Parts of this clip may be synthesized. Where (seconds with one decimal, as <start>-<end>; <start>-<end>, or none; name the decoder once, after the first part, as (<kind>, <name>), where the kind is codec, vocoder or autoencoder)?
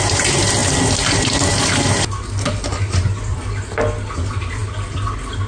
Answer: none